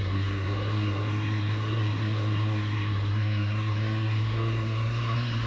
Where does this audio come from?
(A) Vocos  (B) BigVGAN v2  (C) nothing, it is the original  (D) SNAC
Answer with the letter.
D